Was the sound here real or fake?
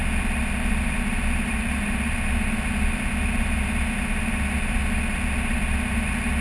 real